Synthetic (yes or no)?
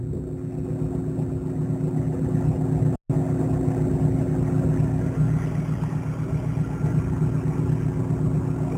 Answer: no